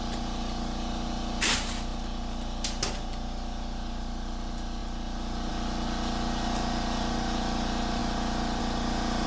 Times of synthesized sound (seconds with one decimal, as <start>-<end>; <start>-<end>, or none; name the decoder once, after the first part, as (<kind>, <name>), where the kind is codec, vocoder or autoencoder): none